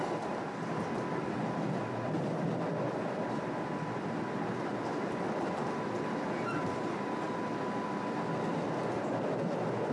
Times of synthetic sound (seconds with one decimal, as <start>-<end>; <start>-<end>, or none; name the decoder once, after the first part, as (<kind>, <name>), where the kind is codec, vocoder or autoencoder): 0.0-4.7 (vocoder, BigVGAN v2); 8.5-9.9